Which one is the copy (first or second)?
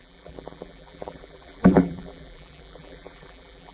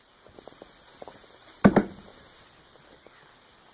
first